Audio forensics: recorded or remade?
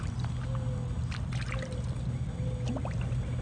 recorded